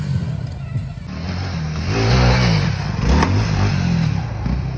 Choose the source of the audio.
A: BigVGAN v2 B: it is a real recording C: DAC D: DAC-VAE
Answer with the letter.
B